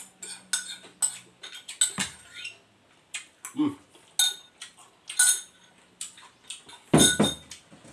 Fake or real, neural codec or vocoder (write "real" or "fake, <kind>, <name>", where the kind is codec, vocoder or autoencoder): real